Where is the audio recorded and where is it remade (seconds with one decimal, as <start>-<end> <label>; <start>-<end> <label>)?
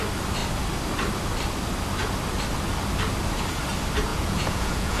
0.0-4.1 recorded; 4.1-5.0 remade